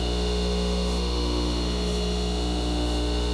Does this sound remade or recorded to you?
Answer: remade